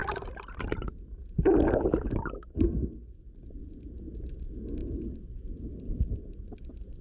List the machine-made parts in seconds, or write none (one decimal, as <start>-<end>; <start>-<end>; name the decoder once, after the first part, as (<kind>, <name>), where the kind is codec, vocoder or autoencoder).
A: 4.8-5.5 (vocoder, BigVGAN v2)